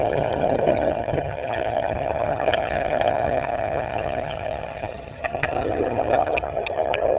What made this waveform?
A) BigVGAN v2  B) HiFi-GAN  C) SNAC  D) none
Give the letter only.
B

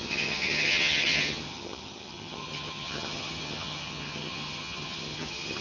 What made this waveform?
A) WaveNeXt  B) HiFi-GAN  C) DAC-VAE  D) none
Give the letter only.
B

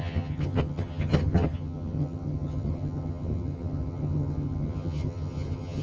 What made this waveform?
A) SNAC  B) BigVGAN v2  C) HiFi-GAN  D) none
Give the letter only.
C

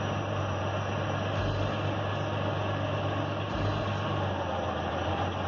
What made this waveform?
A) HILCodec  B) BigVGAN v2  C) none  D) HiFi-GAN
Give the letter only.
C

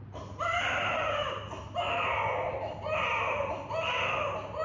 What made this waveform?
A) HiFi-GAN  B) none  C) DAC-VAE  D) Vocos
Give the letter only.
B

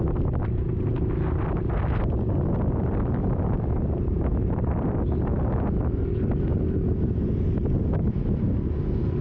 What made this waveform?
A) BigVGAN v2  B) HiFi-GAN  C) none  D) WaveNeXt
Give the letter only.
C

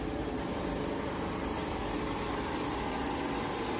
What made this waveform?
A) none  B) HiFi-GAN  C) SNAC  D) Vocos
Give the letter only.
A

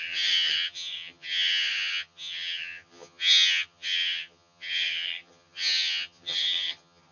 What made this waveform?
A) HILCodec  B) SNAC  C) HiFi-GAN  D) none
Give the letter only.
C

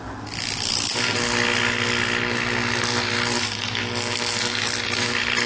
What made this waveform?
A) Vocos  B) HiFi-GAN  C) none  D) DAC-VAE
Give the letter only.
C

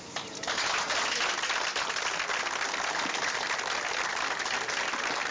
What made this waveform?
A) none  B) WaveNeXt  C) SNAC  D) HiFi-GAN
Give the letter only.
A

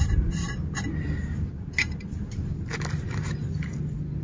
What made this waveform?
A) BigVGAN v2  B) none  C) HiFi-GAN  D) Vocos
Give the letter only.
B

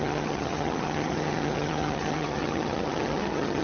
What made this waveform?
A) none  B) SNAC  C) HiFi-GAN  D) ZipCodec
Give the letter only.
C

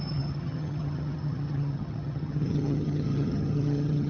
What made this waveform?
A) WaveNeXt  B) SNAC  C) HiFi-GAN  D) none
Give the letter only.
C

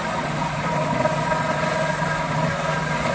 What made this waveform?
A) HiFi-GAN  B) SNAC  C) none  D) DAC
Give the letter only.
C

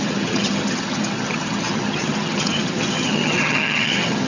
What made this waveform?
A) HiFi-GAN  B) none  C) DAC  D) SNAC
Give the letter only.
A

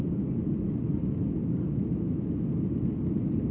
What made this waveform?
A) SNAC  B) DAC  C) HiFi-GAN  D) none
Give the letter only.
D